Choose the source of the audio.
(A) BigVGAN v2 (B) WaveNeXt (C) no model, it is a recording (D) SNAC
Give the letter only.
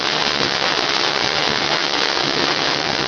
B